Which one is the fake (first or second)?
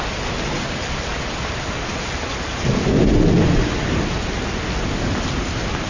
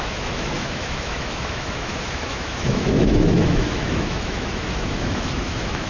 second